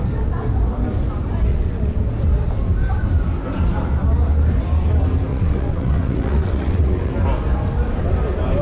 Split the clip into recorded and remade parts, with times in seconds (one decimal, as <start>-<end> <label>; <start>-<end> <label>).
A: 0.0-1.5 recorded; 1.5-2.0 remade; 2.0-5.3 recorded; 5.3-7.1 remade; 7.1-8.6 recorded